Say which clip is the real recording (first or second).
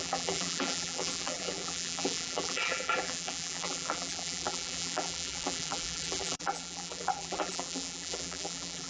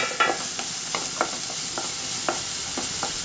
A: second